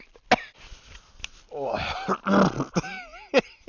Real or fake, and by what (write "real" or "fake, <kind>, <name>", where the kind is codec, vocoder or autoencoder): real